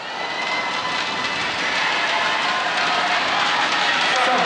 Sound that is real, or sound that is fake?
real